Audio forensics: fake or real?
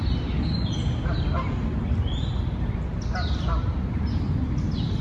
real